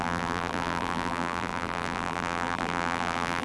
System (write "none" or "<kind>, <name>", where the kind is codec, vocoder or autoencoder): vocoder, BigVGAN v2